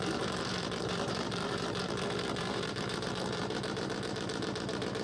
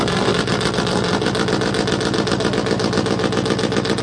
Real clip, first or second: second